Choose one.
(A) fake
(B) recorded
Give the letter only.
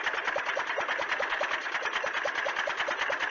B